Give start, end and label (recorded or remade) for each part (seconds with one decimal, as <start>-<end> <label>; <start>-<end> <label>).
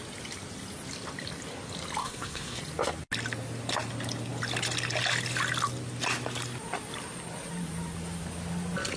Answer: 0.0-2.0 recorded; 2.0-2.6 remade; 2.6-9.0 recorded